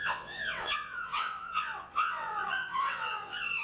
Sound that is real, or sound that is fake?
fake